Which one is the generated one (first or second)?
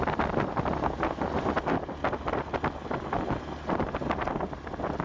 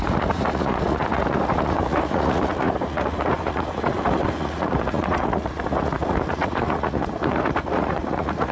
second